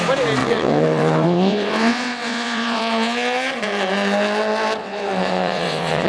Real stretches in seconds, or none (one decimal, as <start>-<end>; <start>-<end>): 0.0-0.4; 2.8-4.8